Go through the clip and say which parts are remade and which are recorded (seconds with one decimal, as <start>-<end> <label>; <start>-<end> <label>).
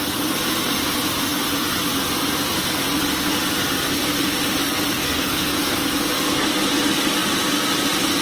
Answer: 0.0-5.0 recorded; 5.0-5.8 remade; 5.8-8.2 recorded